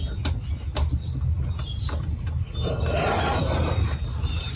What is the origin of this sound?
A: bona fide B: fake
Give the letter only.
A